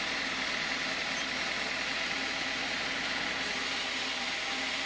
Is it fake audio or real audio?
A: real